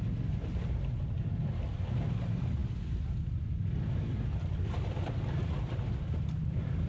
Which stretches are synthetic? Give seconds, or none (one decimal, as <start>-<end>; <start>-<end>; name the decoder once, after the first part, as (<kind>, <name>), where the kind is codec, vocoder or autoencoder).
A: none